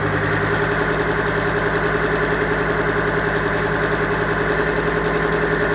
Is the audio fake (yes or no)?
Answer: no